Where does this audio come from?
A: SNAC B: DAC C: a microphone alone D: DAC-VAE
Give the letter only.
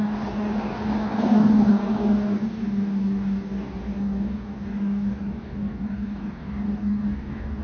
B